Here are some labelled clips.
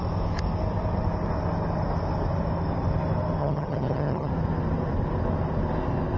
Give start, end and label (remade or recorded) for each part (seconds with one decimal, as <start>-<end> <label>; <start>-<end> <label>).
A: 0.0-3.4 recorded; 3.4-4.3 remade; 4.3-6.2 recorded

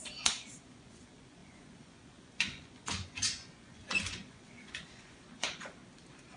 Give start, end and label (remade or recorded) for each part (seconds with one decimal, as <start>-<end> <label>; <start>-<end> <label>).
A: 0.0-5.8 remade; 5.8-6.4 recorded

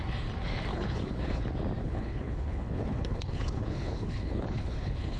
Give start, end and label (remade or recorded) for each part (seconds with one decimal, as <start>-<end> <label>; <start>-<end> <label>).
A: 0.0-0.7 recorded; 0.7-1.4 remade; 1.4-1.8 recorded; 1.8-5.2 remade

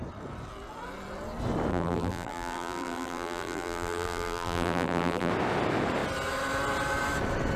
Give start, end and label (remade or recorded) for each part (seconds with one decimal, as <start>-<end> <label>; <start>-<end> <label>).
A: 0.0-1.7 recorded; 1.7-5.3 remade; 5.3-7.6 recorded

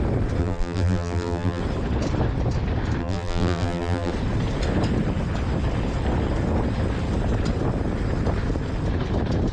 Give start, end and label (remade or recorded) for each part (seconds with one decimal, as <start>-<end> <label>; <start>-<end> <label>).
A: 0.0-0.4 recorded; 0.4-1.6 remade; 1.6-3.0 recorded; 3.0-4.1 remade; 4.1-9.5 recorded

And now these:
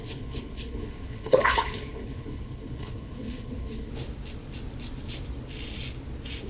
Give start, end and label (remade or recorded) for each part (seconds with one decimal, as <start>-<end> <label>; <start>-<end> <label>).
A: 0.0-3.9 remade; 3.9-6.5 recorded

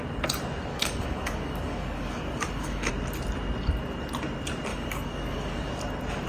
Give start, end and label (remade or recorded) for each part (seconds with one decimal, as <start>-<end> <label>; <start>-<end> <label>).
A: 0.0-0.7 recorded; 0.7-2.9 remade; 2.9-4.7 recorded; 4.7-5.7 remade; 5.7-6.3 recorded